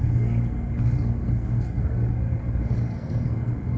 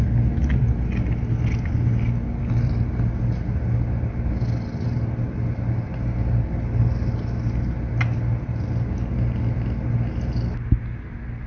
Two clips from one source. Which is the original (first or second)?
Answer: second